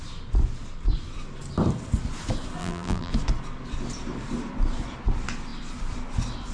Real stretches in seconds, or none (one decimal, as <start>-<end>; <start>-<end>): 0.0-2.6; 3.1-6.5